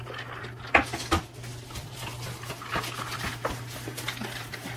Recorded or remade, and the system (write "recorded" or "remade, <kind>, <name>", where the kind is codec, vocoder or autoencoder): recorded